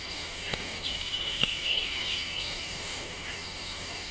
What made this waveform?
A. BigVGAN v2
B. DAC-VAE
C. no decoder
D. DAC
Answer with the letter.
D